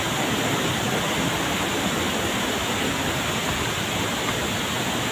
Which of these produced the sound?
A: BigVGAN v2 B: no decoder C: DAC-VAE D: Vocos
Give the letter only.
B